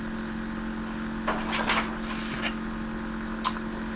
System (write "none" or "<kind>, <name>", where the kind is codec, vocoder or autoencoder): none